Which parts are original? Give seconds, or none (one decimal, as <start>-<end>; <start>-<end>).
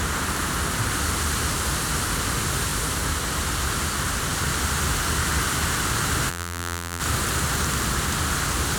0.0-6.3; 7.0-8.8